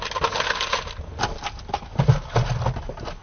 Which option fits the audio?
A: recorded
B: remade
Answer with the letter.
A